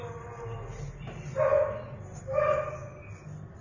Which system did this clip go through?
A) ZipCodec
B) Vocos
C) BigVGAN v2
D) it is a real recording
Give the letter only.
D